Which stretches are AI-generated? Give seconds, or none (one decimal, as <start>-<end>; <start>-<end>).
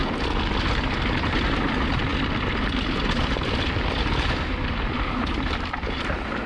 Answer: 0.0-0.6; 2.1-6.0